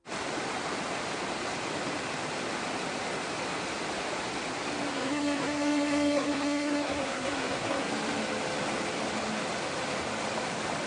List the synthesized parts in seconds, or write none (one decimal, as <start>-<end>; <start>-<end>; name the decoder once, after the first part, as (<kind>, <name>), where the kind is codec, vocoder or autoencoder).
4.9-7.9 (codec, SNAC)